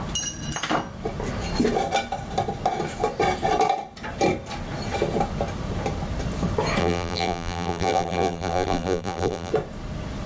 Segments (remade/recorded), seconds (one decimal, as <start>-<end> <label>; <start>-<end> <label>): 0.0-6.8 recorded; 6.8-9.5 remade; 9.5-10.3 recorded

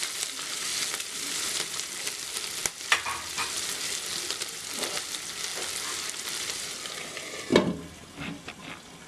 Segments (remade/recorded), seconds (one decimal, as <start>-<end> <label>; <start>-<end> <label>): 0.0-2.6 remade; 2.6-3.3 recorded; 3.3-9.1 remade

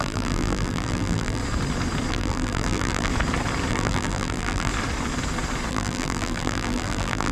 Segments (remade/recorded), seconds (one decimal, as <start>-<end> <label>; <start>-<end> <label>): 0.0-1.4 remade; 1.4-2.1 recorded; 2.1-3.1 remade; 3.1-3.7 recorded; 3.7-4.7 remade; 4.7-5.7 recorded; 5.7-7.3 remade

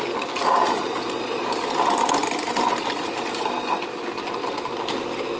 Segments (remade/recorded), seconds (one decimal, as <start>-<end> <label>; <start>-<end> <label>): 0.0-2.2 recorded; 2.2-3.1 remade; 3.1-4.4 recorded; 4.4-5.0 remade; 5.0-5.4 recorded

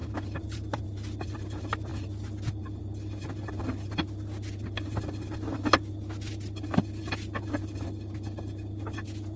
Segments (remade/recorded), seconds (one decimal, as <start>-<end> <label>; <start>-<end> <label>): 0.0-0.8 remade; 0.8-9.4 recorded

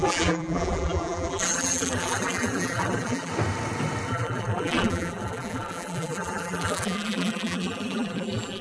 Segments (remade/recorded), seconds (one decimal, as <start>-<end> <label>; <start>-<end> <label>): 0.0-3.3 remade; 3.3-4.1 recorded; 4.1-8.6 remade